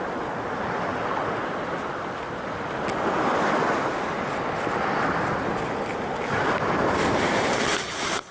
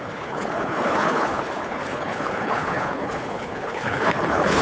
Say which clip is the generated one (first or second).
second